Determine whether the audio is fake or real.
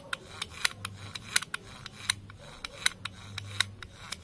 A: real